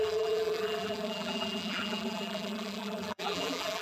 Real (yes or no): no